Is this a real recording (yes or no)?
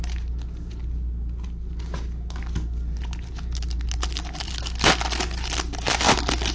yes